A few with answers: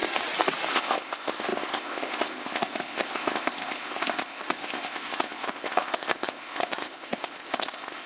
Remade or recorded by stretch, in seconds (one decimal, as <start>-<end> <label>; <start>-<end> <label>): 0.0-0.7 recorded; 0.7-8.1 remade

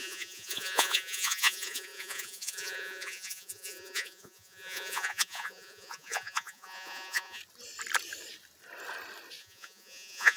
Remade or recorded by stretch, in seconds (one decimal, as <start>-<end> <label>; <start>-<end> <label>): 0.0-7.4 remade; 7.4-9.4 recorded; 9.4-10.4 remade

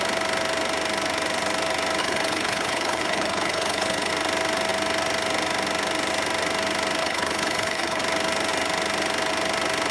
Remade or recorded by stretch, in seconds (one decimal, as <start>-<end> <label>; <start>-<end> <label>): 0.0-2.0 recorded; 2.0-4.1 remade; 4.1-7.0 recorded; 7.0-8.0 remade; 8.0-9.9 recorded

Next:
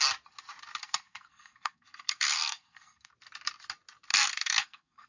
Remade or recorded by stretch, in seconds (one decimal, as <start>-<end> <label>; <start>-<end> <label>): 0.0-0.8 recorded; 0.8-3.1 remade; 3.1-4.1 recorded; 4.1-5.1 remade

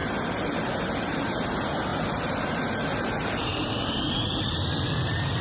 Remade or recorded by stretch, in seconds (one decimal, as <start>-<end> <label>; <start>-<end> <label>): 0.0-1.0 recorded; 1.0-5.4 remade

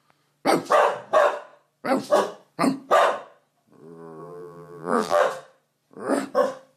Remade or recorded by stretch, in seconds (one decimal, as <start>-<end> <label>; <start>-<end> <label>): 0.0-4.2 recorded; 4.2-5.2 remade; 5.2-6.8 recorded